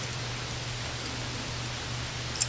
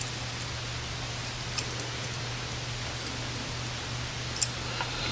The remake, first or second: first